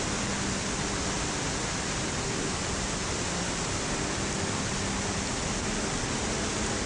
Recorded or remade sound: recorded